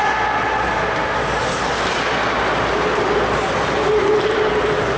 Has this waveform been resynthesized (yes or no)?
no